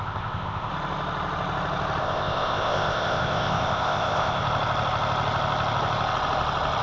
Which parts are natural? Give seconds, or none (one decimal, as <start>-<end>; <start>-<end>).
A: 0.7-2.0; 4.4-6.8

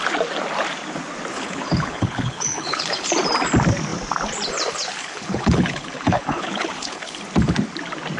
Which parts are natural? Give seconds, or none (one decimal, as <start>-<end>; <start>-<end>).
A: 0.0-1.3; 3.1-5.0; 7.2-8.2

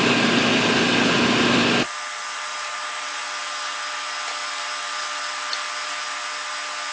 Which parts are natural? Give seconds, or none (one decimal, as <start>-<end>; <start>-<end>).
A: 0.0-2.5; 3.2-6.9